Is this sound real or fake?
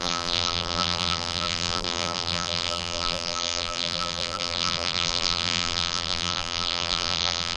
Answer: fake